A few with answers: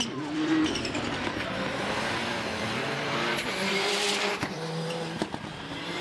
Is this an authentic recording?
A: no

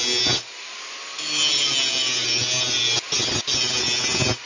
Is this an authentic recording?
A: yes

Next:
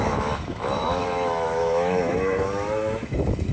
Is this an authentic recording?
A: no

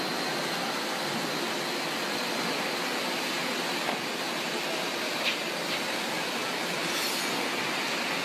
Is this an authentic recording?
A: yes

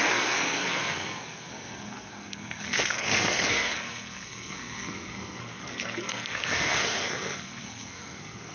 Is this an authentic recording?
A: no